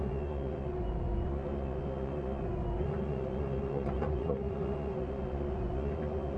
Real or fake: fake